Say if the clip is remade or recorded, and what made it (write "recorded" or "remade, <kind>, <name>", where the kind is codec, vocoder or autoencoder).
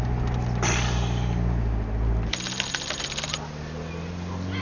recorded